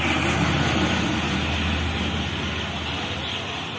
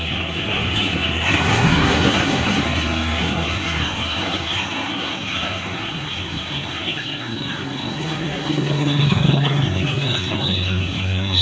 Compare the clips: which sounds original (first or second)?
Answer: first